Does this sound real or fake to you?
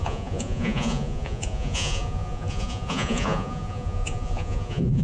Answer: fake